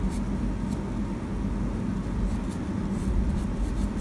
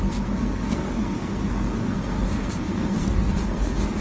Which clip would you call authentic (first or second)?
first